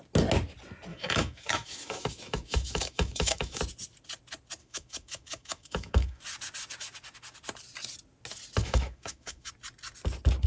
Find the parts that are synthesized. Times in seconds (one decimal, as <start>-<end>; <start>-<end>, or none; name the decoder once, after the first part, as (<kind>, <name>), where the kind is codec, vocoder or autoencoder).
0.9-3.6 (autoencoder, DAC-VAE); 4.6-6.2; 8.6-9.5